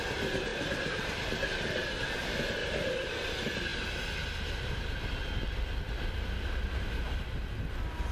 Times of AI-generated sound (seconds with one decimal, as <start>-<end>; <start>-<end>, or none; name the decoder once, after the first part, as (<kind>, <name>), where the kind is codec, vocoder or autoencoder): 2.6-3.3 (vocoder, BigVGAN v2)